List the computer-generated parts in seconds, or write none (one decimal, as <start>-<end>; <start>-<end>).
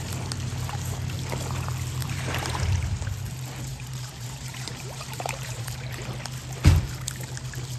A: 2.0-2.6; 3.7-6.1